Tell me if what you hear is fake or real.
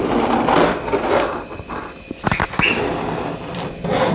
real